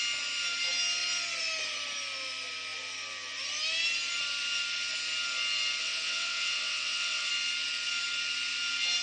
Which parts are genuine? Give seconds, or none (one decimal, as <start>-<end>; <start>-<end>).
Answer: 0.0-5.8; 7.3-9.0